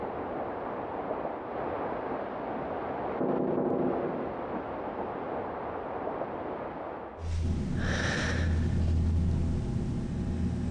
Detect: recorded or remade recorded